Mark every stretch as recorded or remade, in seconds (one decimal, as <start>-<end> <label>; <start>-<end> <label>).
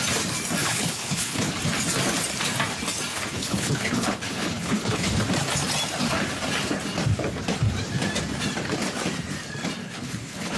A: 0.0-0.6 recorded; 0.6-1.5 remade; 1.5-3.1 recorded; 3.1-5.2 remade; 5.2-9.8 recorded; 9.8-10.6 remade